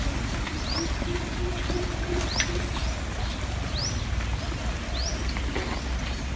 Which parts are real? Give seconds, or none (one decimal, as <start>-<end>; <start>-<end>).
0.0-6.4

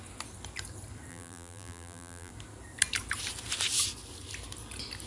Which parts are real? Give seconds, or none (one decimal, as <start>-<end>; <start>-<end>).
0.0-1.1; 2.3-5.1

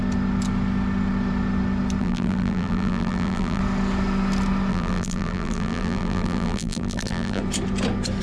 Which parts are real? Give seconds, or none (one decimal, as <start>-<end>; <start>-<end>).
0.0-2.0; 3.6-4.7; 7.4-8.2